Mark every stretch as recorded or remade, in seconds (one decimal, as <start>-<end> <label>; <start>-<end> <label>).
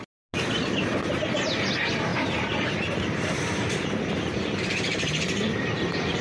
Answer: 0.0-6.2 recorded